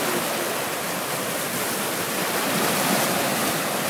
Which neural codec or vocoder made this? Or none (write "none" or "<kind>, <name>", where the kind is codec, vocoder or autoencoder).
none